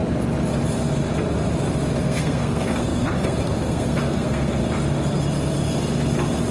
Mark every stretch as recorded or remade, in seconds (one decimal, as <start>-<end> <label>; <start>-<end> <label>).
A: 0.0-2.0 recorded; 2.0-4.6 remade; 4.6-6.5 recorded